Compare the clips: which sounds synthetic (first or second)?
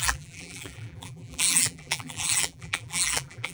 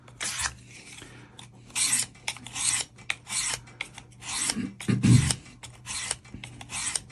first